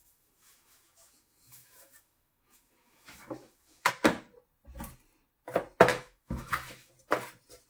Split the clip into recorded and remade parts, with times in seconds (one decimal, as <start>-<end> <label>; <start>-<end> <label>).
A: 0.0-3.9 remade; 3.9-5.9 recorded; 5.9-6.9 remade; 6.9-7.7 recorded